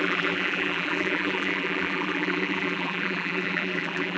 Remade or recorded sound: remade